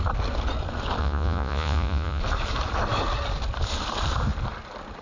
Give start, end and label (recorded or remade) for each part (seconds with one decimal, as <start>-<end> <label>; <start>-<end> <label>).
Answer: 0.0-1.0 recorded; 1.0-2.2 remade; 2.2-5.0 recorded